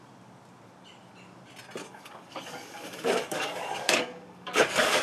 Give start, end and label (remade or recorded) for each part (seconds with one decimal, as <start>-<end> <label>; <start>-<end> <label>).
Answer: 0.0-1.8 recorded; 1.8-5.0 remade